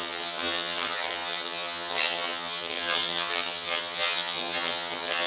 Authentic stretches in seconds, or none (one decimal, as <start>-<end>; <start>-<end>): none